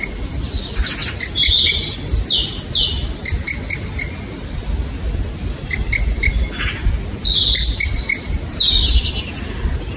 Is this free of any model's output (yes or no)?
yes